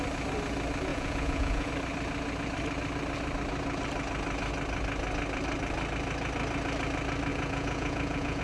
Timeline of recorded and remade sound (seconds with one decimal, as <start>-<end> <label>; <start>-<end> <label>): 0.0-0.9 recorded; 0.9-1.7 remade; 1.7-7.3 recorded; 7.3-8.4 remade